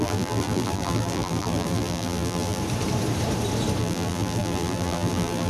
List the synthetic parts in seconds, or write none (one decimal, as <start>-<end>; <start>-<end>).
0.0-2.6; 3.8-5.5